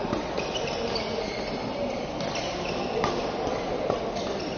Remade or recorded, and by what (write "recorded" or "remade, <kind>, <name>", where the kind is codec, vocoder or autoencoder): recorded